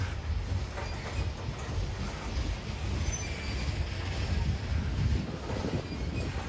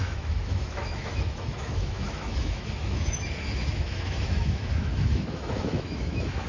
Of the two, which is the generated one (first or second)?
second